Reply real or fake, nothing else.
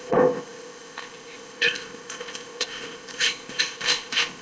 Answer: fake